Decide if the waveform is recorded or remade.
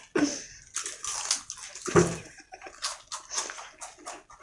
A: recorded